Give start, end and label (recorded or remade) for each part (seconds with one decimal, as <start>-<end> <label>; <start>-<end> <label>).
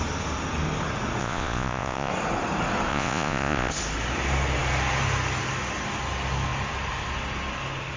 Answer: 0.0-1.2 recorded; 1.2-2.1 remade; 2.1-2.9 recorded; 2.9-3.7 remade; 3.7-8.0 recorded